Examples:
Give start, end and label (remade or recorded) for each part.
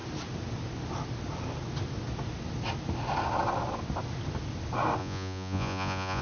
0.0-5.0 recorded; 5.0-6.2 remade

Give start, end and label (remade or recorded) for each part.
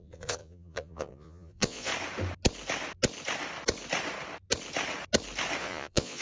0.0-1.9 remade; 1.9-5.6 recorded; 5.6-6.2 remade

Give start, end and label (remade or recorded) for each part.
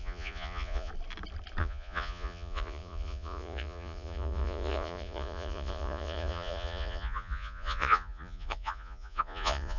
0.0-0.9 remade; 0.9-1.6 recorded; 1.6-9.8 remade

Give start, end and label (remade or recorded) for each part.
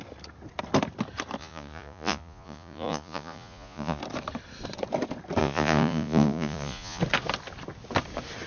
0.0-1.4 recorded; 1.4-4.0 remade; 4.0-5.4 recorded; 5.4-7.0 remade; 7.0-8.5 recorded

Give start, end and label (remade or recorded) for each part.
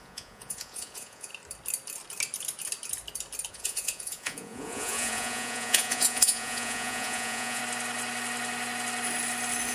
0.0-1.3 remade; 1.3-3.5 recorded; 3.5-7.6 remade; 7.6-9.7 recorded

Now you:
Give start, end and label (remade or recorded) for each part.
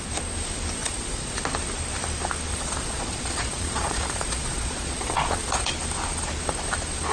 0.0-0.8 recorded; 0.8-1.4 remade; 1.4-2.5 recorded; 2.5-5.7 remade; 5.7-7.1 recorded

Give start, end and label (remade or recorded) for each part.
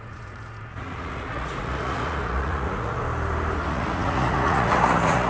0.0-3.0 remade; 3.0-3.7 recorded; 3.7-5.3 remade